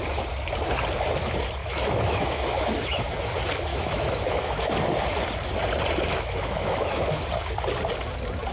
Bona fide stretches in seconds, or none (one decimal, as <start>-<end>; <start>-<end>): 0.0-1.6; 3.0-3.7; 4.7-6.1; 7.2-8.5